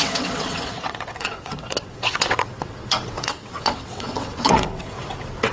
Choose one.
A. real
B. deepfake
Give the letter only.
B